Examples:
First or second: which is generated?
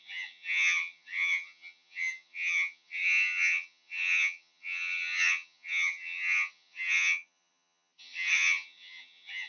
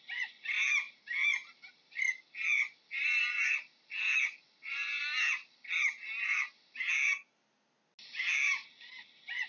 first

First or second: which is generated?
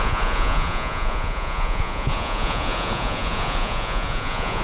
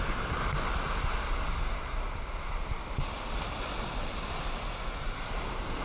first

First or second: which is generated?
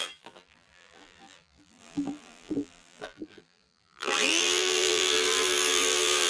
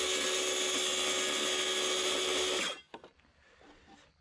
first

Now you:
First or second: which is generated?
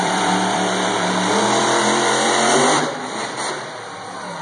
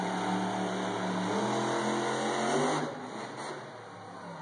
first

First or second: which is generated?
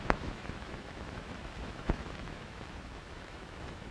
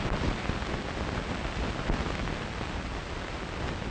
first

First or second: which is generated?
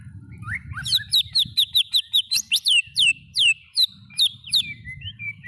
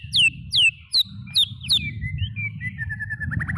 first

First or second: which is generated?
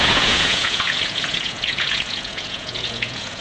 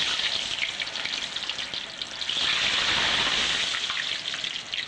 first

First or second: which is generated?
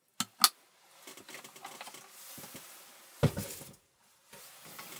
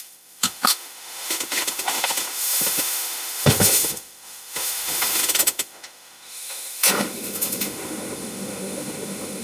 second